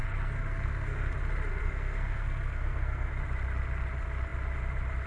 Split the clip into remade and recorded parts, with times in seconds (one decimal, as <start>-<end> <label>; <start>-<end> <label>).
0.0-1.1 remade; 1.1-1.5 recorded; 1.5-3.1 remade; 3.1-5.1 recorded